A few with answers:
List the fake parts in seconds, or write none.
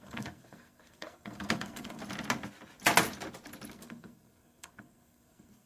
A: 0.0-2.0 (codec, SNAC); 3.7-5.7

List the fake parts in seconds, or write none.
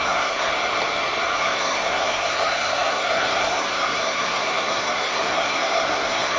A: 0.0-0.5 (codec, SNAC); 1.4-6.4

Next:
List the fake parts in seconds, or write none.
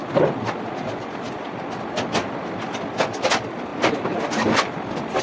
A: none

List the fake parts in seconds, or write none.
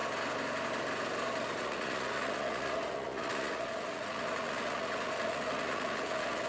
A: 1.6-6.5 (vocoder, Vocos)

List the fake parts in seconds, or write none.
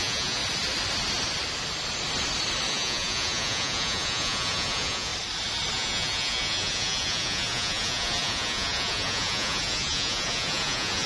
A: 0.0-0.4 (vocoder, Vocos); 2.7-5.1; 5.7-11.1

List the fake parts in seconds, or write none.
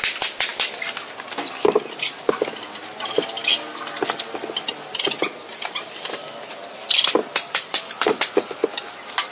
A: none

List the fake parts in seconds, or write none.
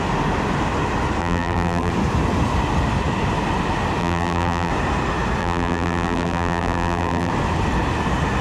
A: 1.2-1.9 (vocoder, BigVGAN v2); 4.0-4.7; 5.4-7.3